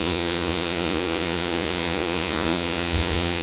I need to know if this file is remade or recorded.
remade